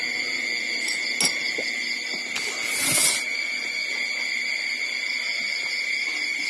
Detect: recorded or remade recorded